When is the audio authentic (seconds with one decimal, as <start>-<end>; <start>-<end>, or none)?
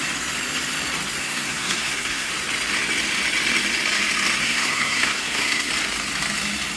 0.0-1.2; 2.3-4.4; 5.7-6.8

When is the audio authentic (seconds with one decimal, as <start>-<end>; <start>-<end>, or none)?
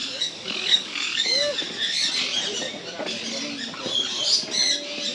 1.6-5.1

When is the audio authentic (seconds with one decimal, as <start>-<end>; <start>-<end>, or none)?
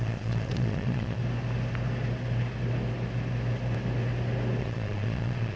1.2-4.6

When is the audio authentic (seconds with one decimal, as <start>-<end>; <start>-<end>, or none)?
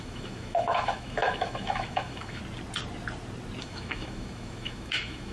2.4-3.6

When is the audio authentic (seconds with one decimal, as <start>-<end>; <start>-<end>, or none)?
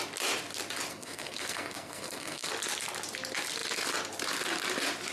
0.0-0.9; 2.5-5.1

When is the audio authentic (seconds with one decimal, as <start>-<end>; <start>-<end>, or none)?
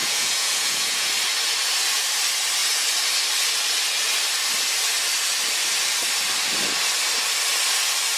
1.1-8.2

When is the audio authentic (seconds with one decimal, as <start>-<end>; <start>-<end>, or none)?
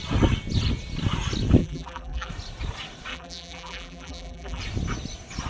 0.0-1.6; 2.3-3.1; 4.6-5.5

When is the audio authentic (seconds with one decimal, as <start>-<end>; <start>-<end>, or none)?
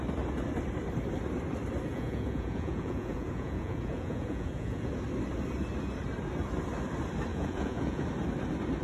0.0-1.9; 4.9-7.3; 8.0-8.8